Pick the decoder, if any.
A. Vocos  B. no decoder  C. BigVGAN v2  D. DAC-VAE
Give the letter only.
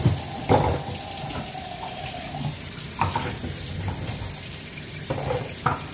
C